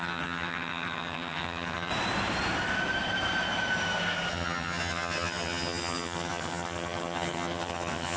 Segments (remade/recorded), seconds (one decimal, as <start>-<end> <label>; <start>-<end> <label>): 0.0-1.9 remade; 1.9-4.3 recorded; 4.3-8.2 remade